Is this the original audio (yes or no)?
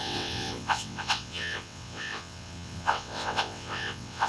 no